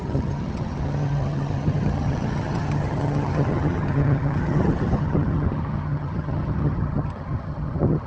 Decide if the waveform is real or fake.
fake